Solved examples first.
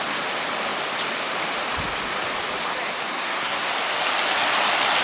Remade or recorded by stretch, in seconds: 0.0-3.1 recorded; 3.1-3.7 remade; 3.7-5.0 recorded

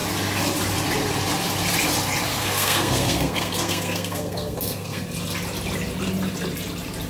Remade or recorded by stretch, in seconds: 0.0-2.3 recorded; 2.3-5.0 remade; 5.0-7.1 recorded